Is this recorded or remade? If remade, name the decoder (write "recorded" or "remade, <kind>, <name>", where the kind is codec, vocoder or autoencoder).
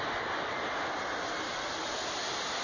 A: recorded